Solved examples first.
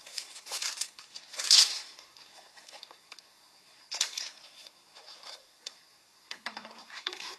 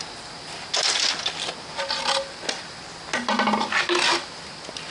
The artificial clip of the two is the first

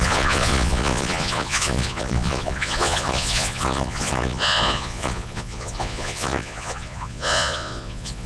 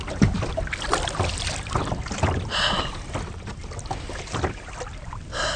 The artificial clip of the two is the first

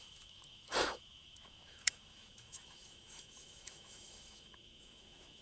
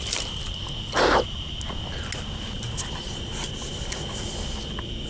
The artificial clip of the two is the first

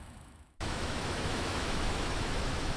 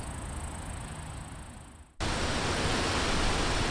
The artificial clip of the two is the first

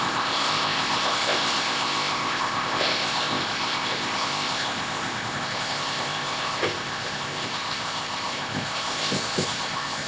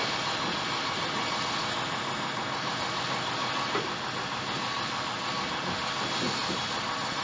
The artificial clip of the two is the first